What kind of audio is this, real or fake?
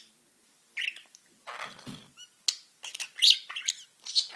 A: real